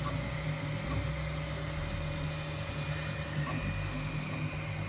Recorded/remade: recorded